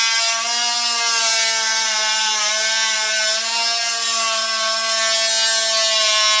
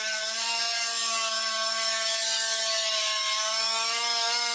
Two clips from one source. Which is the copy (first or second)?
second